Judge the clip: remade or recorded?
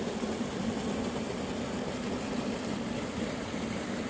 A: recorded